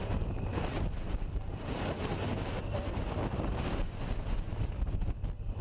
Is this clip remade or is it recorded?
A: recorded